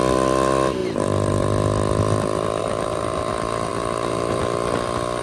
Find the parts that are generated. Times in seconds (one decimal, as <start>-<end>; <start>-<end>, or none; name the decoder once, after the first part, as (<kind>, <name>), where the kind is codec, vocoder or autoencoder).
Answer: 0.8-1.4 (vocoder, BigVGAN v2); 2.6-3.3; 3.7-4.4